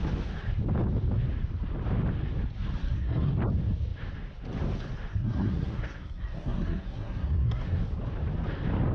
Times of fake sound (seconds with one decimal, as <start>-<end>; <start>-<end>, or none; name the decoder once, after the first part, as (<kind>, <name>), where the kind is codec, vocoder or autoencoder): 2.8-3.3 (codec, SNAC); 5.1-7.8